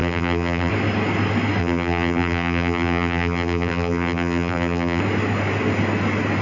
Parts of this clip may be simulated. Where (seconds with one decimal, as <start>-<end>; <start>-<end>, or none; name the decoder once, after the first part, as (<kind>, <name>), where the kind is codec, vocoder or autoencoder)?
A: 0.0-0.7 (vocoder, BigVGAN v2); 1.6-5.0